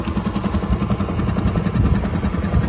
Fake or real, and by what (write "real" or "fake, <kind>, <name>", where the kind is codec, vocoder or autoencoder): real